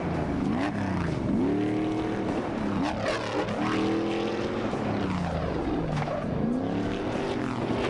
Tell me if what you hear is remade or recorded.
recorded